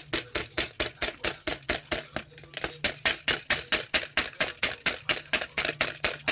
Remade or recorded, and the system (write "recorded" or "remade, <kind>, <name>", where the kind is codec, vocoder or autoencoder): recorded